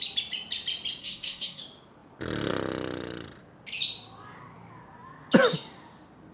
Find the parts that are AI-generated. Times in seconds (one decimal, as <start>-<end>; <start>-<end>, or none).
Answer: 1.0-1.6